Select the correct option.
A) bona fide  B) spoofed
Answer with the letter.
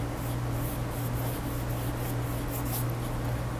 A